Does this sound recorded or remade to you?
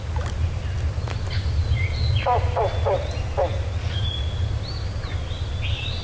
recorded